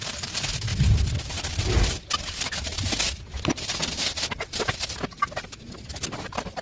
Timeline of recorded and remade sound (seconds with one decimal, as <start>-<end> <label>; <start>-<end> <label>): 0.0-0.7 recorded; 0.7-2.1 remade; 2.1-6.6 recorded